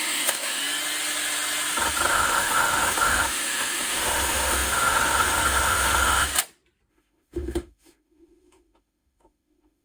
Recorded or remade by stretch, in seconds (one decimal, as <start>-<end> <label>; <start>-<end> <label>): 0.0-0.6 remade; 0.6-2.1 recorded; 2.1-6.3 remade; 6.3-6.9 recorded; 6.9-9.8 remade